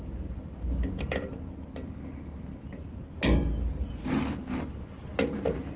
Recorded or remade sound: recorded